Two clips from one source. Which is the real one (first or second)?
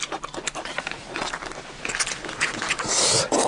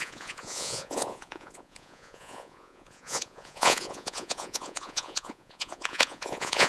first